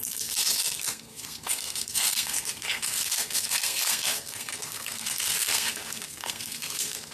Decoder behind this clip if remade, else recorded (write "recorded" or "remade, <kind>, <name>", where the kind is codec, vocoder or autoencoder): remade, codec, SNAC